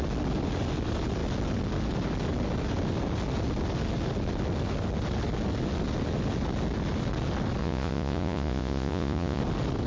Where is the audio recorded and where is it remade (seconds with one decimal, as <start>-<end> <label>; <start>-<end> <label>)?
0.0-7.6 recorded; 7.6-9.4 remade; 9.4-9.9 recorded